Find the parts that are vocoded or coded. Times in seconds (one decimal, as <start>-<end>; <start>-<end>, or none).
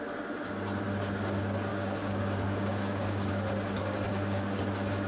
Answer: 1.7-3.3; 4.1-4.6